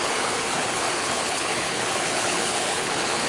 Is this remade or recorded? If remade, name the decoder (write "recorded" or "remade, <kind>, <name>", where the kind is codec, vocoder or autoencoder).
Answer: remade, codec, HILCodec